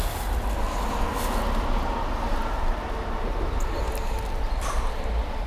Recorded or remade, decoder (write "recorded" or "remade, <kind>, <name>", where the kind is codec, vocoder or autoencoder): recorded